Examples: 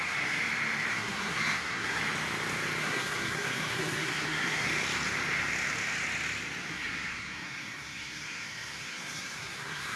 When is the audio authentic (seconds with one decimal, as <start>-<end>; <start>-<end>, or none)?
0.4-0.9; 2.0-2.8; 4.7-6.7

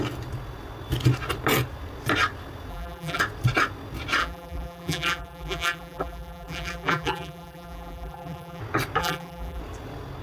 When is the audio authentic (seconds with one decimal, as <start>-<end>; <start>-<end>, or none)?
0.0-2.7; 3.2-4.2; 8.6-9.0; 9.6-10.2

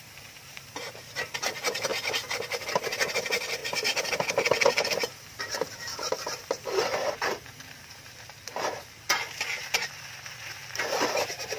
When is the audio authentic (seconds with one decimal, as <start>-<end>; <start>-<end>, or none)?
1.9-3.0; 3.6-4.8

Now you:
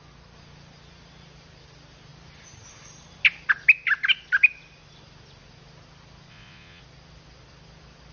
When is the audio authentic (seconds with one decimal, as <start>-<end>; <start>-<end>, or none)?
0.0-6.3; 6.8-8.1

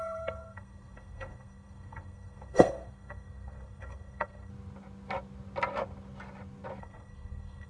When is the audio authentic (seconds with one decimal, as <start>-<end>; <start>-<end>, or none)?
4.5-6.8

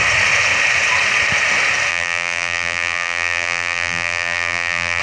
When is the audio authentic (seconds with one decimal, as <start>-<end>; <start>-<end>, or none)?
0.0-1.9

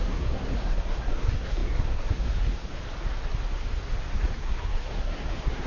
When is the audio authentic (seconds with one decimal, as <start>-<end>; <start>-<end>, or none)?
2.7-4.1